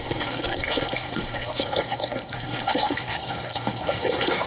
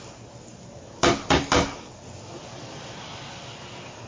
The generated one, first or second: first